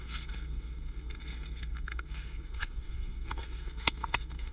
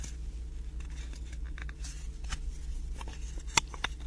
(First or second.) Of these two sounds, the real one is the second